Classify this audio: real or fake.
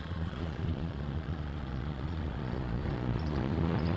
fake